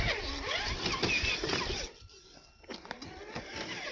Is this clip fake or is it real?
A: real